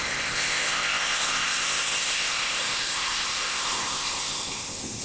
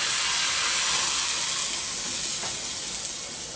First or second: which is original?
second